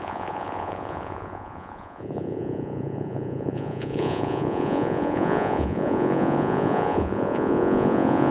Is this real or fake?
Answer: fake